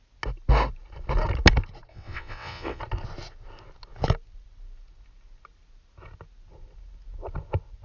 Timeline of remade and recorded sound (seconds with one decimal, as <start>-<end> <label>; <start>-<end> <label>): 0.0-1.9 recorded; 1.9-2.8 remade; 2.8-7.8 recorded